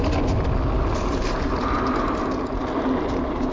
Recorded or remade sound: recorded